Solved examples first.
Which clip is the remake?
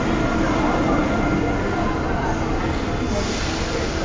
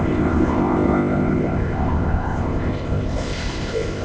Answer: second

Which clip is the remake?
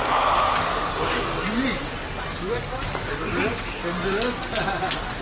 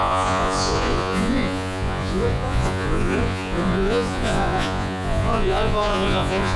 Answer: second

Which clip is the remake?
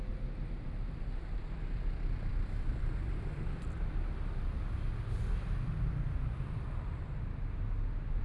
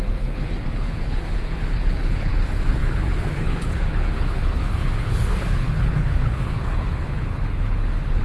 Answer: second